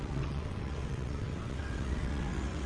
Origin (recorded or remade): remade